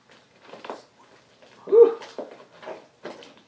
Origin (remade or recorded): recorded